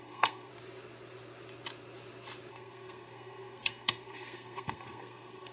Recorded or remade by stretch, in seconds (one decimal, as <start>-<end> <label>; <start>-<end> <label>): 0.0-0.5 remade; 0.5-2.5 recorded; 2.5-5.5 remade